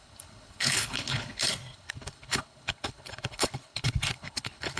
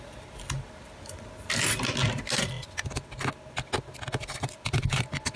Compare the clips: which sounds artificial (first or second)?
first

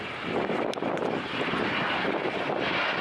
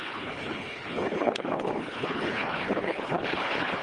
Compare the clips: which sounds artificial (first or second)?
second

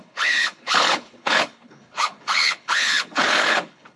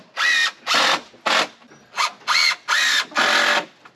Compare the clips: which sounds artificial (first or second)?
first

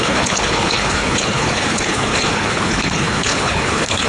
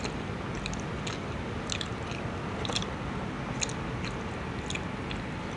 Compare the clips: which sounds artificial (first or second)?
first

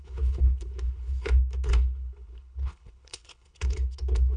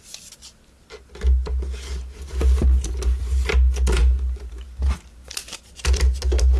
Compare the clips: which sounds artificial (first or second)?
first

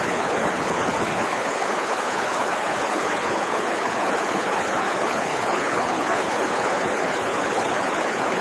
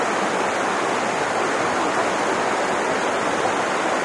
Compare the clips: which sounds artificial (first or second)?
first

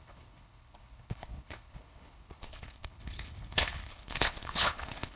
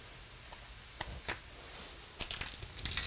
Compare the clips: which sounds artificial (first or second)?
first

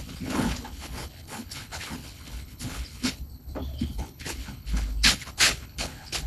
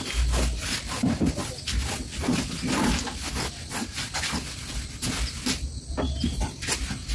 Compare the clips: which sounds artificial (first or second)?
first